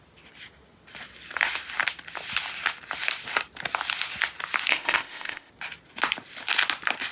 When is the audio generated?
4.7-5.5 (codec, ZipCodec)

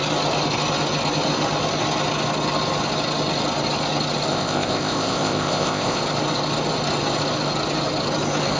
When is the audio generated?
4.3-6.0 (codec, ZipCodec)

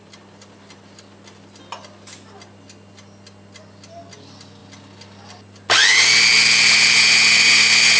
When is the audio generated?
none